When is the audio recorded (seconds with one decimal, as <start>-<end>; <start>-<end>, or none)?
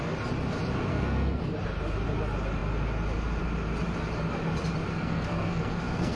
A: 0.0-0.9; 1.4-4.9